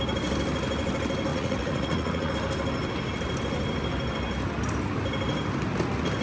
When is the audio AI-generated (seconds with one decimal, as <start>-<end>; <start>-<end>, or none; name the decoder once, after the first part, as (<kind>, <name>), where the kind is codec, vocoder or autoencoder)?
1.3-2.3 (vocoder, Vocos)